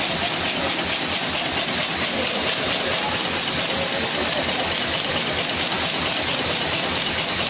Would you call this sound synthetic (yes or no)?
no